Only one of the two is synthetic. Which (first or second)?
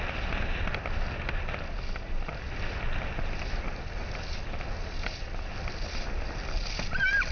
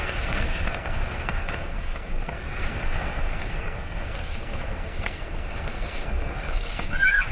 second